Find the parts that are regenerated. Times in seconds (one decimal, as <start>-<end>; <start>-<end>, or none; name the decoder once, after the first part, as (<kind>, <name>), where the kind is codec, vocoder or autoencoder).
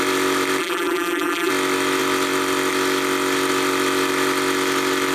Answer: 0.6-1.5 (vocoder, BigVGAN v2)